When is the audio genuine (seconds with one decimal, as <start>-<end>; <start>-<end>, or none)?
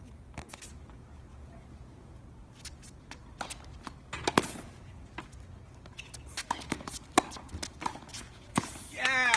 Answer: 0.0-1.3; 2.2-8.1; 8.8-9.4